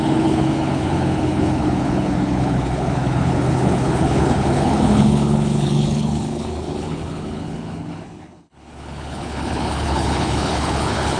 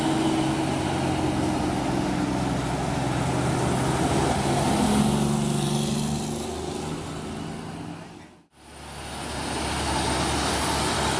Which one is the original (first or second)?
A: second